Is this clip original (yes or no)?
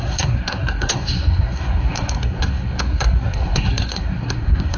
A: no